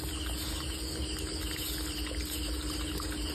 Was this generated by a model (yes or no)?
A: no